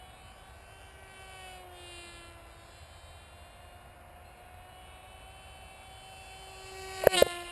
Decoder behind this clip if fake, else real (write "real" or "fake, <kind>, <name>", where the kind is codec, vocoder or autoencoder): real